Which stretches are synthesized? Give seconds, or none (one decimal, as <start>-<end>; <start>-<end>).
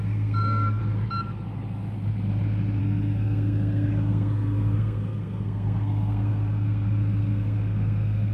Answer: 0.0-0.8; 2.8-8.3